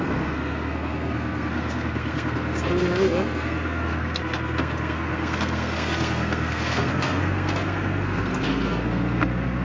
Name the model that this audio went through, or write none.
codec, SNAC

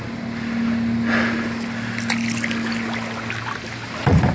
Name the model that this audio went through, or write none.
none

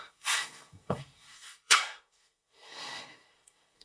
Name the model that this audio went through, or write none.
codec, SNAC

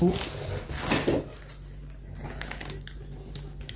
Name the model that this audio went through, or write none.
none